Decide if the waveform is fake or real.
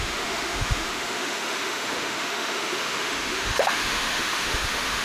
fake